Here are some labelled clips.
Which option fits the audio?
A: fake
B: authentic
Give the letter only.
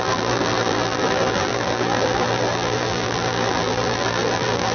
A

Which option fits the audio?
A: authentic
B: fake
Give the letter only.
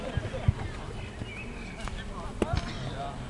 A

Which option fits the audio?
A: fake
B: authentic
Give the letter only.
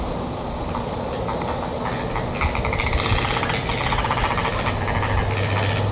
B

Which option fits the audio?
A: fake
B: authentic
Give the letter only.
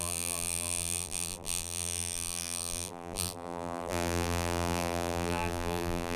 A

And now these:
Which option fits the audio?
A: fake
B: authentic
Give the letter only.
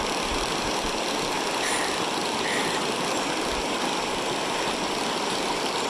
A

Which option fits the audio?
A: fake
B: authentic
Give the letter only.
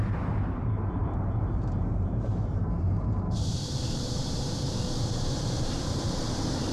A